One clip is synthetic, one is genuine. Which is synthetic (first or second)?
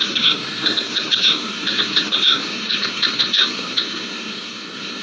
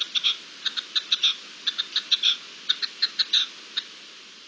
first